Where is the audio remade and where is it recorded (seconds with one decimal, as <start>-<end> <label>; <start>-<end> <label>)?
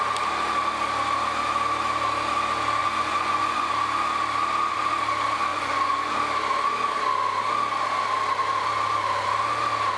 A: 0.0-2.8 recorded; 2.8-3.7 remade; 3.7-5.5 recorded; 5.5-6.2 remade; 6.2-10.0 recorded